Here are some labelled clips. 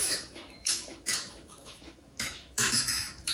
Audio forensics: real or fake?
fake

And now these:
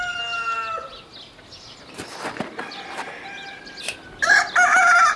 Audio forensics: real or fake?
real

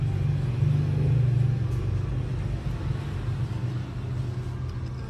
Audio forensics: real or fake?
real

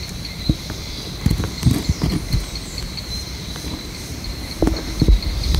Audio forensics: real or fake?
real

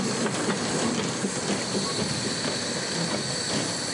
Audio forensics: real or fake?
real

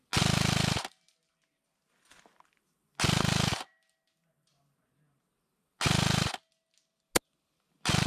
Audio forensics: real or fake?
real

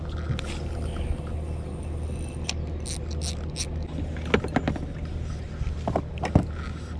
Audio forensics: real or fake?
real